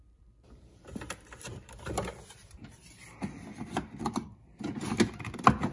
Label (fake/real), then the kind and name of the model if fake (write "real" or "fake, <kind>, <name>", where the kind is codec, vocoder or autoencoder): real